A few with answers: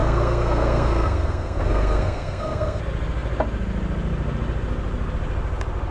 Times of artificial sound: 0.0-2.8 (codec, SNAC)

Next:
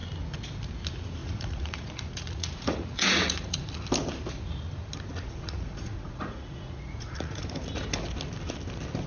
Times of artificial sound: 1.2-3.7 (vocoder, Vocos); 5.1-7.4

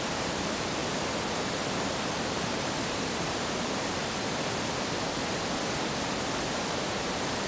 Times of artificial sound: 0.0-0.8 (vocoder, BigVGAN v2); 2.3-4.0; 6.4-7.5